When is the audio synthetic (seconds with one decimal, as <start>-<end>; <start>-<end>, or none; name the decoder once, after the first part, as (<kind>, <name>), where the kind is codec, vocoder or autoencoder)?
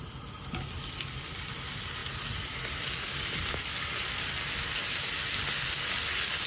none